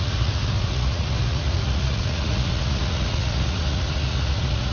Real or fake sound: fake